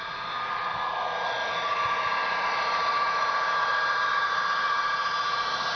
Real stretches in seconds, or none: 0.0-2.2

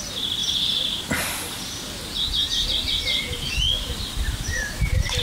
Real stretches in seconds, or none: 0.0-5.2

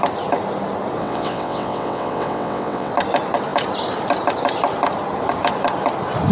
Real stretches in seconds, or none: 0.0-1.0; 2.9-6.3

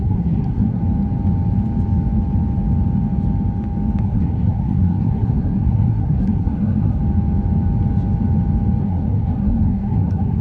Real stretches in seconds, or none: 0.8-4.0; 7.0-8.8

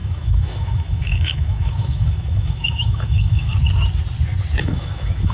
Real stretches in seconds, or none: 3.5-4.6

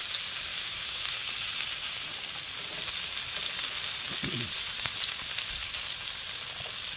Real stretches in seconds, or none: 0.0-0.5; 1.3-7.0

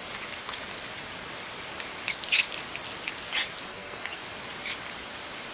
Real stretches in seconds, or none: 0.0-3.7; 4.2-5.5

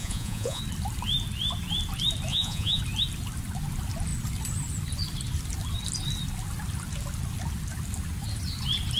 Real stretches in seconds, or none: 0.6-2.3; 2.8-9.0